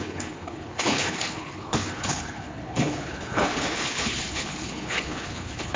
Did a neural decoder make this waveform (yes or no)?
yes